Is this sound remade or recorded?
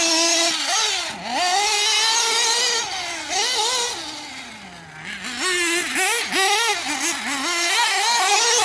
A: recorded